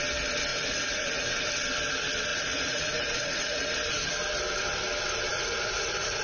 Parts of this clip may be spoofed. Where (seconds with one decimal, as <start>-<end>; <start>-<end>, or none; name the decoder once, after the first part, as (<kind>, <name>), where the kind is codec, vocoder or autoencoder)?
0.5-1.5 (vocoder, Vocos); 2.3-3.7; 5.3-6.2